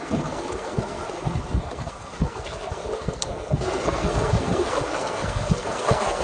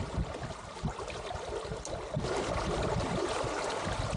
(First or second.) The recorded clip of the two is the second